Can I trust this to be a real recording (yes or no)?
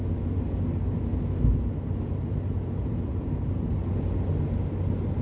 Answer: yes